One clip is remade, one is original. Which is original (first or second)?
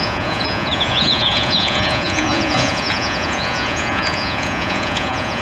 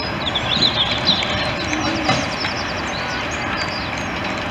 second